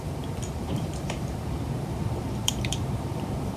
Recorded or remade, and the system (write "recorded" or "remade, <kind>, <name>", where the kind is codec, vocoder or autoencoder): remade, vocoder, BigVGAN v2